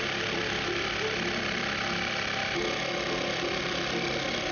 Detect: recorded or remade recorded